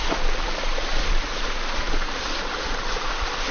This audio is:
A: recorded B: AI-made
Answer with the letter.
B